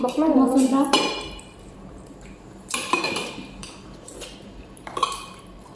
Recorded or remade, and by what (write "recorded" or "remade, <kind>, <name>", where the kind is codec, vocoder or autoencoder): remade, vocoder, BigVGAN v2